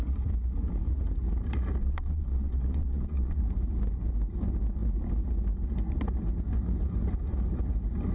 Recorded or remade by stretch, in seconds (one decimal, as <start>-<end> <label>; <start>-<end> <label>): 0.0-1.8 recorded; 1.8-3.4 remade; 3.4-8.1 recorded